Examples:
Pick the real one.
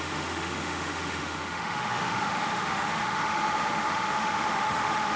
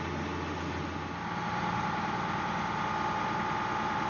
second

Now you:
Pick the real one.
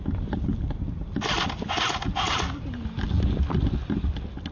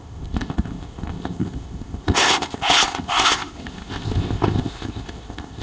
first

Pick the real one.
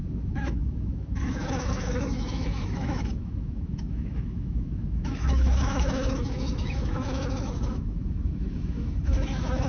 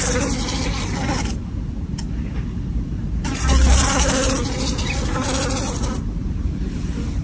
second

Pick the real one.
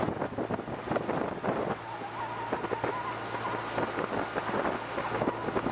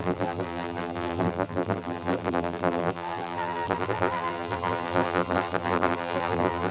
first